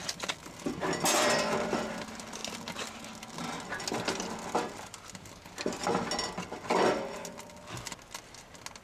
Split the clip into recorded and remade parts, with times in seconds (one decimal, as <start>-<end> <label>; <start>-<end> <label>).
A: 0.0-8.8 recorded